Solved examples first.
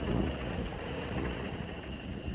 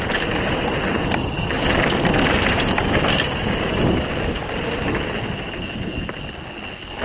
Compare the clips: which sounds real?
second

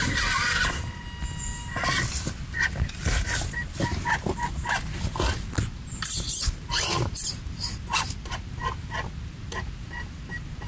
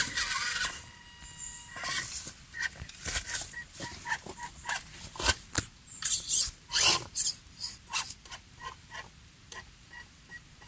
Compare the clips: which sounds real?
first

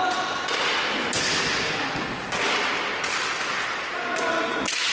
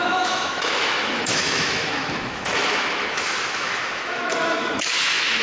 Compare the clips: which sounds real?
first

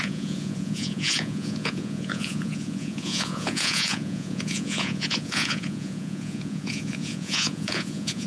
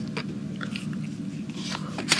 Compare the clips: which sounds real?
second